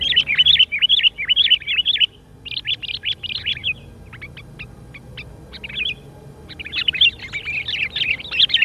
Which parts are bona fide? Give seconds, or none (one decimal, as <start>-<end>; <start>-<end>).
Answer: 0.0-8.6